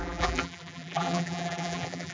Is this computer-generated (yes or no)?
yes